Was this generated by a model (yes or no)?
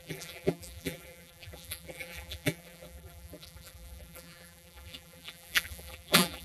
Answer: yes